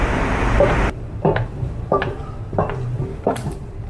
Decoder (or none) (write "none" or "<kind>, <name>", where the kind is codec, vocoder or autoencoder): vocoder, BigVGAN v2